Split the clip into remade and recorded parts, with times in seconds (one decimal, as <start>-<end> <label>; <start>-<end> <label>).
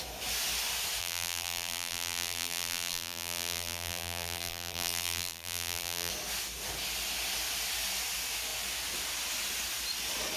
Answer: 0.0-1.0 recorded; 1.0-6.1 remade; 6.1-10.4 recorded